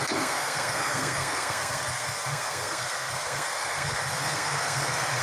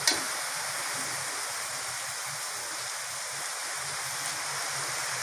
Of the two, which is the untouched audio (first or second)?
second